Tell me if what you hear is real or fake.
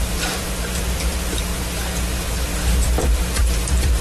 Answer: fake